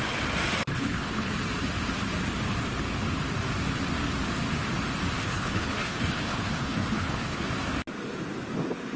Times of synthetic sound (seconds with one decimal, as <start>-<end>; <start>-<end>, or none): 0.7-1.3; 5.2-7.5